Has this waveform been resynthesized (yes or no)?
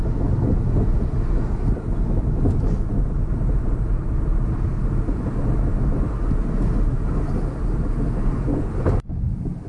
no